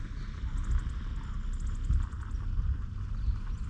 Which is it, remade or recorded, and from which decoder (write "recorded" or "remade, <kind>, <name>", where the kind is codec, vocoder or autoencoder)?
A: recorded